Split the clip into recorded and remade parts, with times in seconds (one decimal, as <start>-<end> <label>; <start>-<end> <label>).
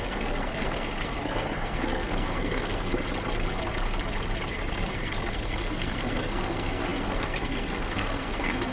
0.0-2.9 remade; 2.9-4.5 recorded; 4.5-8.7 remade